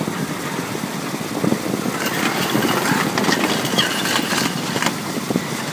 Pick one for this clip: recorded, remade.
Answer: recorded